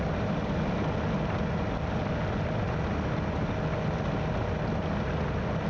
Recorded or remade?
recorded